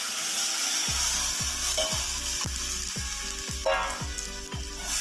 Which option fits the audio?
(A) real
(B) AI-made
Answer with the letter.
A